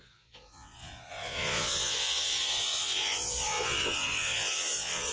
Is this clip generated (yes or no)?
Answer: yes